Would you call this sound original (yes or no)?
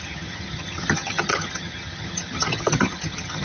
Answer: no